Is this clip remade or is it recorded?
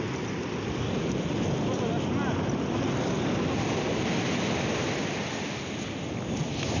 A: recorded